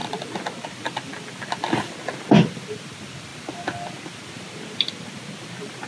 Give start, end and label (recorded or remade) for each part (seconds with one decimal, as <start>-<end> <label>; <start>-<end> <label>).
0.0-5.9 recorded